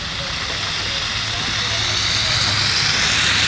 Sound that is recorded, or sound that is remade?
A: recorded